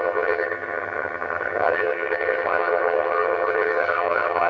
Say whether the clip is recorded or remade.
remade